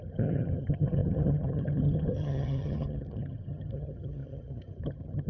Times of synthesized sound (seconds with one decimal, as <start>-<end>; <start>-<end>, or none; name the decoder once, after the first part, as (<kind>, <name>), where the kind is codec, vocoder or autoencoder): 0.0-5.3 (vocoder, HiFi-GAN)